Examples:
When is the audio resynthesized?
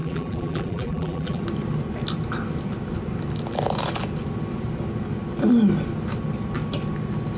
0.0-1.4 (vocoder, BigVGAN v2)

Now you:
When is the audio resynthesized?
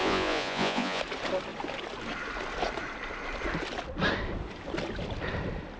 0.0-1.0 (vocoder, Vocos)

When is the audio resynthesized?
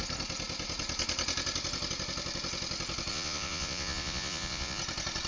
3.1-4.8 (vocoder, Vocos)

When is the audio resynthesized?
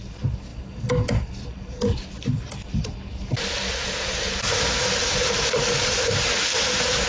none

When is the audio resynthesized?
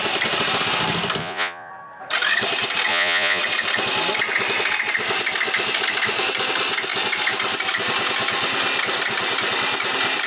1.2-1.7 (vocoder, Vocos); 2.9-3.4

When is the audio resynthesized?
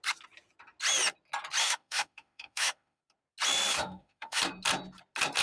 1.6-3.0 (autoencoder, DAC-VAE); 3.7-4.4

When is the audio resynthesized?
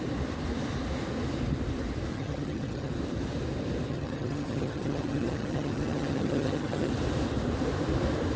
2.1-2.9 (vocoder, HiFi-GAN); 3.9-6.9